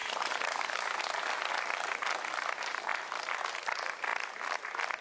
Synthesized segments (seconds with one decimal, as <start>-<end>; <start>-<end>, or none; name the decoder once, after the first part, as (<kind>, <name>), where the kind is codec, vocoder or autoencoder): none